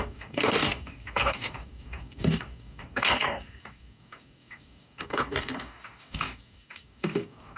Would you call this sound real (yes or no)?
no